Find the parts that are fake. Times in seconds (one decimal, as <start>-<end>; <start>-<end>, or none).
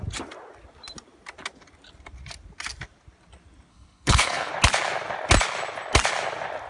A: 3.7-4.5